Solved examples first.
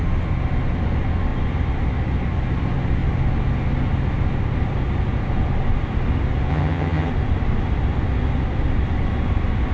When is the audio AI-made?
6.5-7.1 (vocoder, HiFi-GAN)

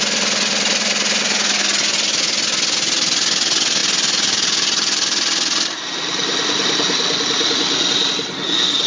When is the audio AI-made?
none